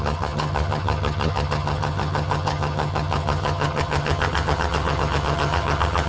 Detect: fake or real fake